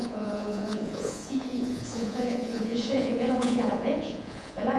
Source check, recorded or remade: remade